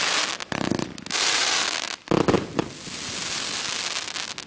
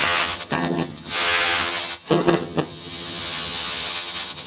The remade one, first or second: second